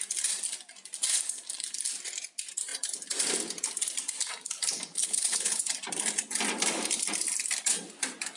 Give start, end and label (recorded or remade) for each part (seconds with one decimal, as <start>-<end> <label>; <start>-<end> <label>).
0.0-5.0 recorded; 5.0-5.7 remade; 5.7-8.4 recorded